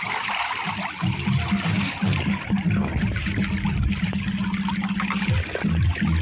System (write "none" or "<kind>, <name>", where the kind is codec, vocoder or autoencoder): none